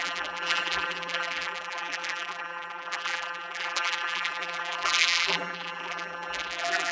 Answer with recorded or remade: remade